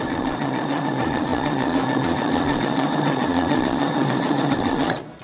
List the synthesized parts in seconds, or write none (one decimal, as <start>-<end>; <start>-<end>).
0.0-5.2